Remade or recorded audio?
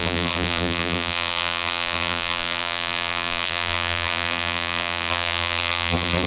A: remade